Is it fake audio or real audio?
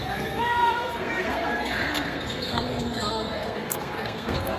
fake